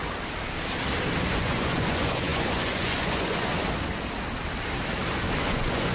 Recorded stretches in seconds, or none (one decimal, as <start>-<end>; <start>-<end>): 0.0-1.3; 3.5-5.4